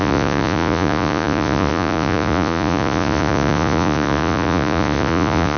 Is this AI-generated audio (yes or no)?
yes